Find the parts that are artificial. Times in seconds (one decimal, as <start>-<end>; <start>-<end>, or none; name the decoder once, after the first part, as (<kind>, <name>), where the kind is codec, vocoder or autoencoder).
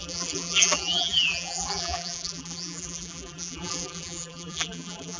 0.0-5.2 (vocoder, BigVGAN v2)